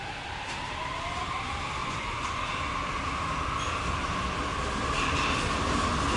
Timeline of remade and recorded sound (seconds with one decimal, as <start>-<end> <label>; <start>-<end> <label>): 0.0-1.8 recorded; 1.8-2.5 remade; 2.5-6.2 recorded